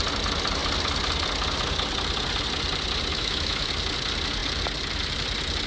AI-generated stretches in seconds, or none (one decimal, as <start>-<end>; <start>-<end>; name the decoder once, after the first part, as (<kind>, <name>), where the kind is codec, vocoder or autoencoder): 3.1-3.7 (autoencoder, DAC-VAE)